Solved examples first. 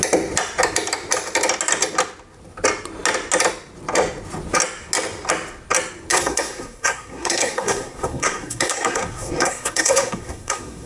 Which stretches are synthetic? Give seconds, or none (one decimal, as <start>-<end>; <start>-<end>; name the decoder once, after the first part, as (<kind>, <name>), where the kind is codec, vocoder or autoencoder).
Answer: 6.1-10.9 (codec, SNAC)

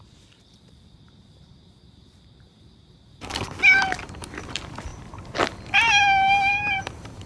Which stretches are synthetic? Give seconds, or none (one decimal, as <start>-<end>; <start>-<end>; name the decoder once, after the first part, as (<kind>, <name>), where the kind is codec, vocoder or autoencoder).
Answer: 0.0-3.3 (vocoder, BigVGAN v2); 4.0-4.9; 6.8-7.3

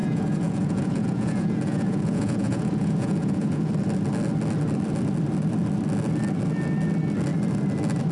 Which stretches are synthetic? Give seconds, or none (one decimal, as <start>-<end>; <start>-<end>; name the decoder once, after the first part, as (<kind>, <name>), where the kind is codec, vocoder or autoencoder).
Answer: 0.0-3.7 (vocoder, Vocos)

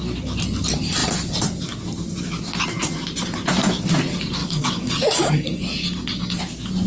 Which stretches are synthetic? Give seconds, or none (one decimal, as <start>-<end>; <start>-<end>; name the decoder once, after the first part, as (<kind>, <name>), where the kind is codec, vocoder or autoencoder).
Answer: 4.4-6.4 (codec, DAC)

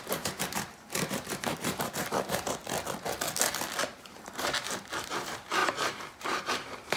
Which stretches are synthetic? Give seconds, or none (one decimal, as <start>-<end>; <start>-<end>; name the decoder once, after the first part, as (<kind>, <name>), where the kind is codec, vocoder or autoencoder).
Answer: 0.0-2.6 (vocoder, BigVGAN v2); 3.9-7.0

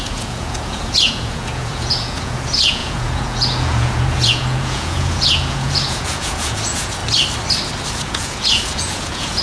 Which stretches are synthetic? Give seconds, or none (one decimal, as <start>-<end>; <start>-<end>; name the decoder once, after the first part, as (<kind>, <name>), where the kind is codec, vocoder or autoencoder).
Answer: 0.0-7.0 (vocoder, Vocos); 7.9-9.4

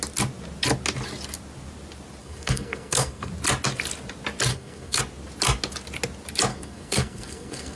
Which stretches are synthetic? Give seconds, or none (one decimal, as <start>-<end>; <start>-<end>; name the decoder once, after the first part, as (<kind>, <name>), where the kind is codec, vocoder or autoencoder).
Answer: 2.2-3.3 (codec, SNAC); 4.5-5.0; 6.5-7.8

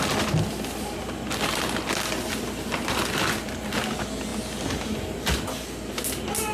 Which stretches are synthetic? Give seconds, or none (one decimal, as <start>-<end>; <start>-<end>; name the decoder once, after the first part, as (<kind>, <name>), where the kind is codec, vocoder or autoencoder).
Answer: none